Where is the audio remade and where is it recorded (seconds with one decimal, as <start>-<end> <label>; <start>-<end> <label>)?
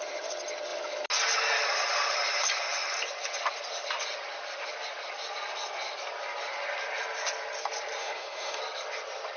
0.0-8.0 recorded; 8.0-8.6 remade; 8.6-9.4 recorded